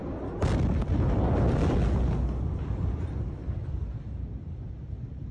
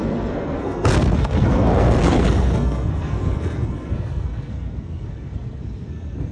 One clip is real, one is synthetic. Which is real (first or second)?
first